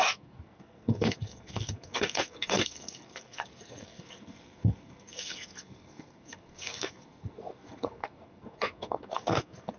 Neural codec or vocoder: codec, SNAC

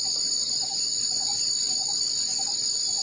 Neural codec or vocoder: none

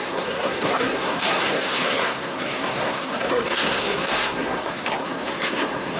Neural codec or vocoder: codec, SNAC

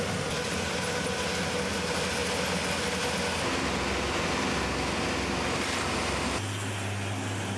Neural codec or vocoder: none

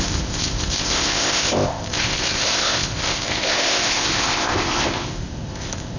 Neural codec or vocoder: codec, ZipCodec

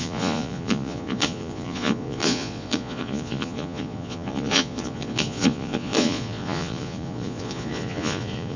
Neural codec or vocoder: vocoder, Vocos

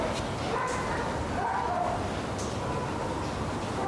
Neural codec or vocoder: none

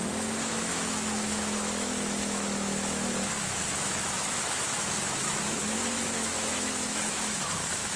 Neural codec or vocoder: autoencoder, DAC-VAE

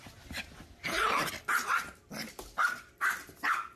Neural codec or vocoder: none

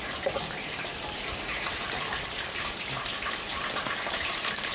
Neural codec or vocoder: vocoder, BigVGAN v2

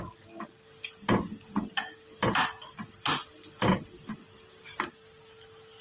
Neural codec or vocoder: none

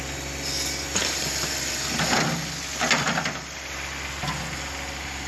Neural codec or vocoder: none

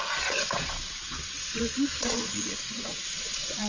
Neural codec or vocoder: vocoder, Vocos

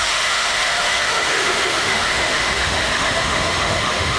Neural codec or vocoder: autoencoder, DAC-VAE